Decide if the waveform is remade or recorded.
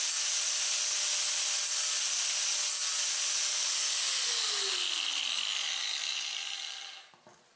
recorded